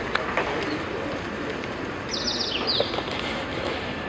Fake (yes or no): no